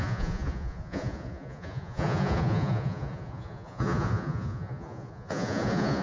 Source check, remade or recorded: remade